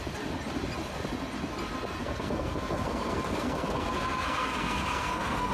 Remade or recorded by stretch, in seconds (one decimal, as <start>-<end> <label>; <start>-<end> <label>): 0.0-2.0 recorded; 2.0-5.5 remade